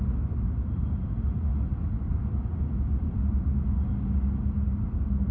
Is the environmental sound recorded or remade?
recorded